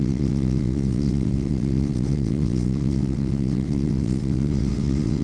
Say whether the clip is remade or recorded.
remade